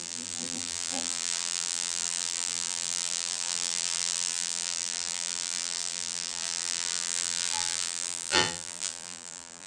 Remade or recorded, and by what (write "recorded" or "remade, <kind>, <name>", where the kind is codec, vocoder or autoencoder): remade, vocoder, BigVGAN v2